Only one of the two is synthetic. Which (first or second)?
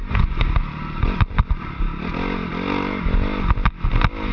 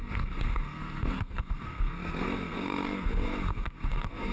second